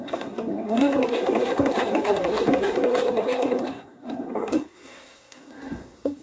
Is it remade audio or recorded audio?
remade